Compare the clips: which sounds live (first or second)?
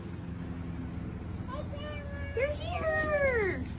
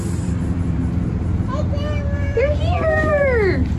first